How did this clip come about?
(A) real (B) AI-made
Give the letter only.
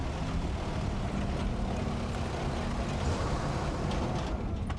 A